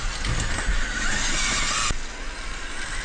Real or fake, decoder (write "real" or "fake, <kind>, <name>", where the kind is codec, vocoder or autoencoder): real